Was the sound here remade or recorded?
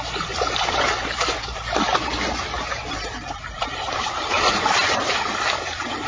remade